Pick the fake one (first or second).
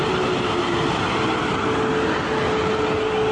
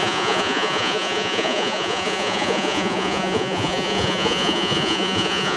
second